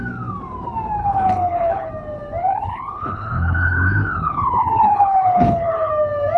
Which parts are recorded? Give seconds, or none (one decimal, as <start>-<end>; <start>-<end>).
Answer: 0.0-1.0; 1.9-2.4; 5.9-6.4